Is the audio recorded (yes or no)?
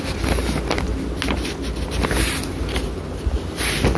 yes